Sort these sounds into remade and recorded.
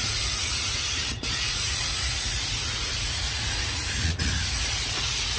remade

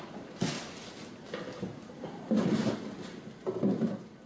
recorded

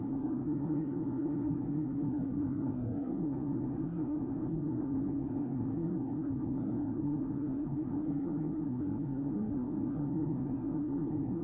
remade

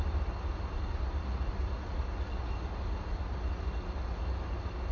recorded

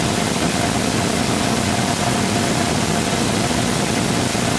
recorded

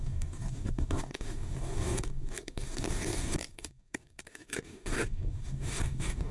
remade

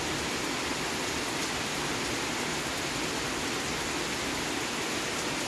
recorded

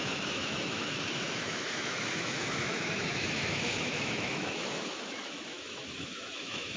remade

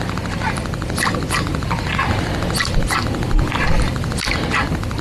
recorded